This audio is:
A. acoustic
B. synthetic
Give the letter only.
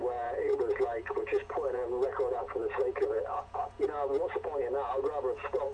B